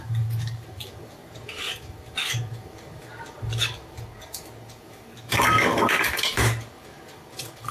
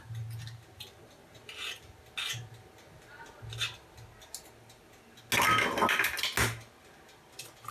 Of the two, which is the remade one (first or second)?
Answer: first